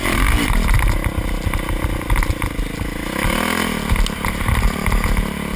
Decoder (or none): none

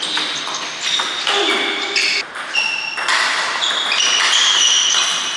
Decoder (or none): none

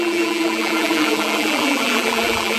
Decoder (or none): vocoder, BigVGAN v2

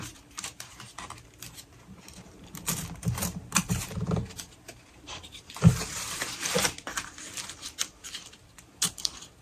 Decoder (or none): vocoder, BigVGAN v2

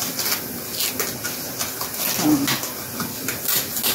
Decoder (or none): none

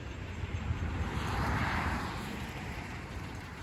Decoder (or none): vocoder, BigVGAN v2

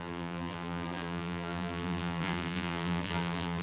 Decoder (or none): vocoder, BigVGAN v2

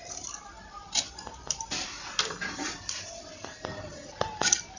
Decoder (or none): none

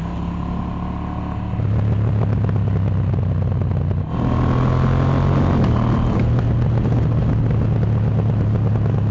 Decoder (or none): none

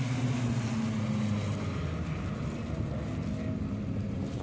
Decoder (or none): none